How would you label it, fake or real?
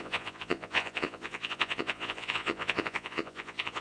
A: fake